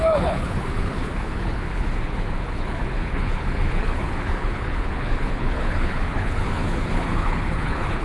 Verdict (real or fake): fake